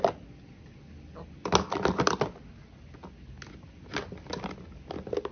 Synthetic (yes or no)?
no